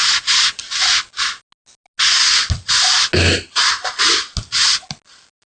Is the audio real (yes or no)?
yes